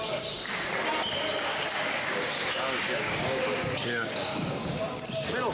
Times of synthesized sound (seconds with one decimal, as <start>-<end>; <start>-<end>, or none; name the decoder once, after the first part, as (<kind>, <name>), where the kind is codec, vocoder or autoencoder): 1.5-4.8 (codec, DAC)